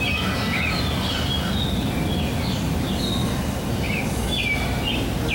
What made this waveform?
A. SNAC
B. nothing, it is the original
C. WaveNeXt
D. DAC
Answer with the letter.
B